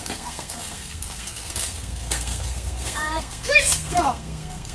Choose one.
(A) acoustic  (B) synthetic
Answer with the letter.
B